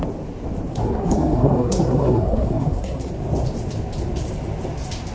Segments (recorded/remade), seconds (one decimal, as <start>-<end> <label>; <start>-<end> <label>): 0.0-0.7 recorded; 0.7-3.1 remade; 3.1-5.1 recorded